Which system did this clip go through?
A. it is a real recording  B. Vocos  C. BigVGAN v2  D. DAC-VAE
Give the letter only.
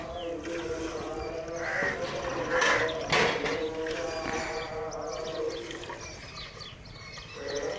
A